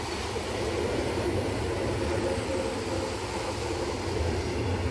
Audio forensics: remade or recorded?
recorded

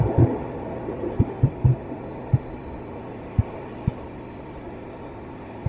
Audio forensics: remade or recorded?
recorded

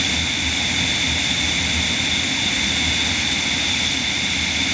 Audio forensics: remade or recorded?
recorded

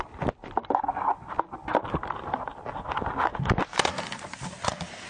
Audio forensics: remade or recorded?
recorded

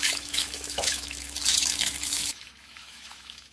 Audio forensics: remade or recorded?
remade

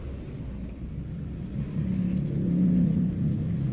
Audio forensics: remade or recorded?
recorded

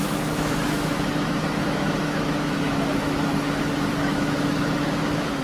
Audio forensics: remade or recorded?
remade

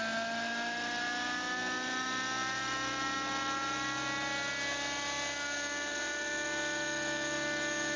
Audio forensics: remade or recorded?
recorded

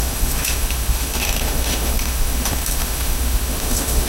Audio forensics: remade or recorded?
remade